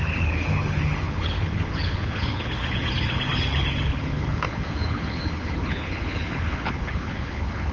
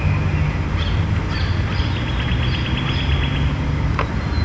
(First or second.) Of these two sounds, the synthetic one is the first